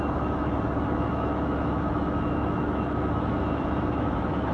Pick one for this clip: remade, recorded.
remade